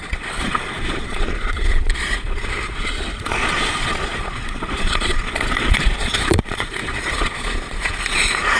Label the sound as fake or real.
fake